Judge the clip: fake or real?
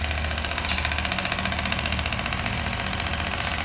real